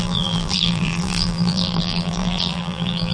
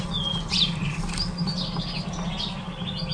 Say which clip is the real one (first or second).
second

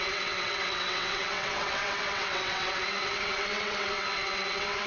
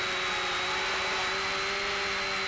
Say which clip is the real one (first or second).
second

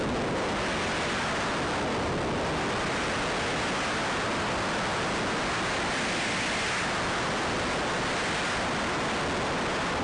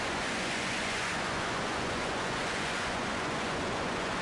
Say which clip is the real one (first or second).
first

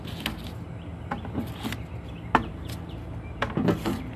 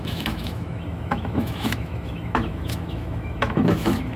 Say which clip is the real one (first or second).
first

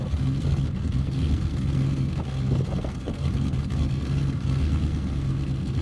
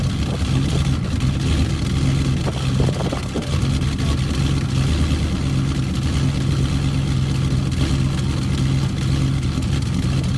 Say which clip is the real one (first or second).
second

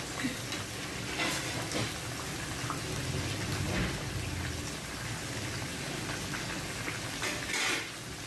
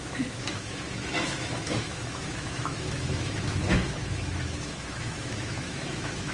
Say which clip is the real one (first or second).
first